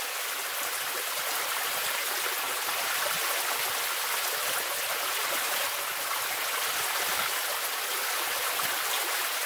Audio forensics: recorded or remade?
recorded